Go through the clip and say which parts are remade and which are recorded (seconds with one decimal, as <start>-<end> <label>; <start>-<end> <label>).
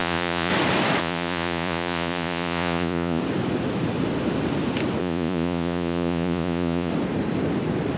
0.0-0.5 remade; 0.5-1.0 recorded; 1.0-3.2 remade; 3.2-5.0 recorded; 5.0-6.9 remade; 6.9-8.0 recorded